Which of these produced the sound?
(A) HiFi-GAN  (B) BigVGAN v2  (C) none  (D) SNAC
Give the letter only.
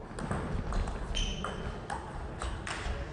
C